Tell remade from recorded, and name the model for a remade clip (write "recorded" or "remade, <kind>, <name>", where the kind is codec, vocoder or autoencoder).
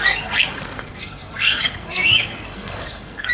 remade, codec, SNAC